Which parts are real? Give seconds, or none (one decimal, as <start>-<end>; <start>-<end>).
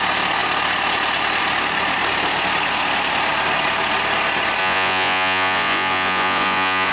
0.0-4.6